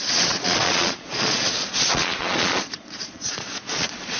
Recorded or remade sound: remade